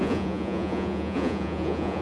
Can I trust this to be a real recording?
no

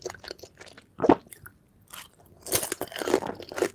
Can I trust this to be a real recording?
yes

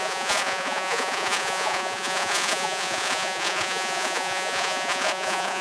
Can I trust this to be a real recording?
no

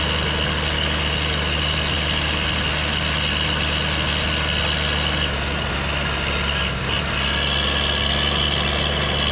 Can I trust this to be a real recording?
yes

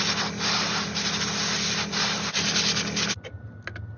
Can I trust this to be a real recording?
yes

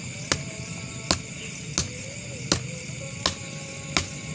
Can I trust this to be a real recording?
yes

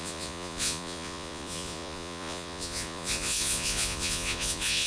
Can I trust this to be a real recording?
no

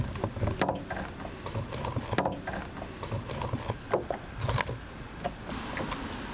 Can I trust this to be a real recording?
yes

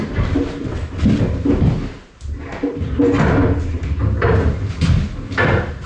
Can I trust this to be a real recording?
yes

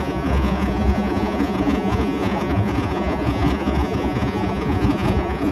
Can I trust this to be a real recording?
no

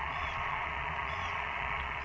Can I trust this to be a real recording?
no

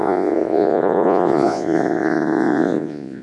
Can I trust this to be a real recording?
no